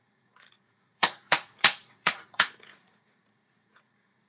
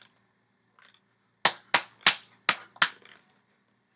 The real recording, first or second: second